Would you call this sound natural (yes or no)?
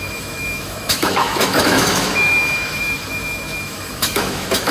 no